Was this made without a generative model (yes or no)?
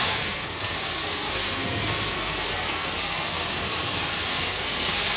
no